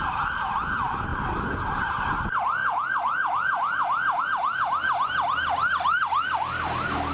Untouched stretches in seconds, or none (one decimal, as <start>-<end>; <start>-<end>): 0.0-7.1